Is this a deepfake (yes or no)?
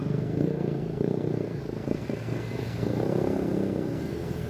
yes